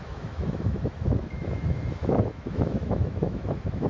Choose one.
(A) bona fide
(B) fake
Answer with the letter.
B